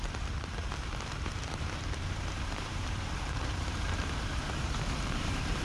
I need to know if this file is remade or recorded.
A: remade